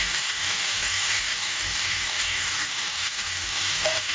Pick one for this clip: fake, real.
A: fake